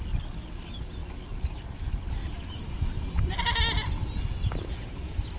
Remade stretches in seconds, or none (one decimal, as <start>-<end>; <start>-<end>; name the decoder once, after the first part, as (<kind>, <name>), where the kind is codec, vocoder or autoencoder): none

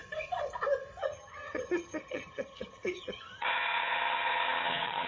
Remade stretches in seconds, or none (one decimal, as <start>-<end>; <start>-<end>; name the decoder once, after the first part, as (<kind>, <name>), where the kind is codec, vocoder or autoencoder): 1.0-5.1 (vocoder, HiFi-GAN)

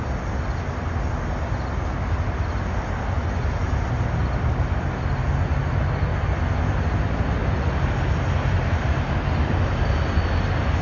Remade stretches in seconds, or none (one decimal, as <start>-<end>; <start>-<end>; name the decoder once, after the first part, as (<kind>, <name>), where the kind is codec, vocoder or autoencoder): none